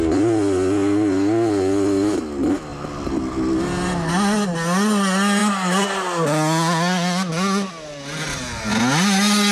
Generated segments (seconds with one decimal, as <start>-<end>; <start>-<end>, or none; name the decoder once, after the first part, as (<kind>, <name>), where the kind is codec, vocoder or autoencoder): none